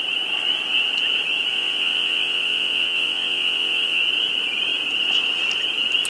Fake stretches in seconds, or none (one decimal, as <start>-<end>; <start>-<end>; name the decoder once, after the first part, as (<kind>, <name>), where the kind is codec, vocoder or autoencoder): 1.5-4.0 (vocoder, WaveNeXt)